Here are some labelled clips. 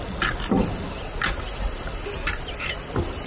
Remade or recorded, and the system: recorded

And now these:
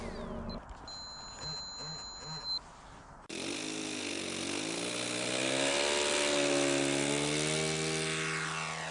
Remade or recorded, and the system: recorded